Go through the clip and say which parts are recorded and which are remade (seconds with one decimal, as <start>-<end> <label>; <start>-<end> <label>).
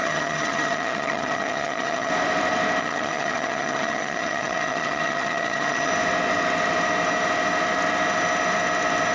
0.0-2.1 remade; 2.1-2.8 recorded; 2.8-5.9 remade; 5.9-9.1 recorded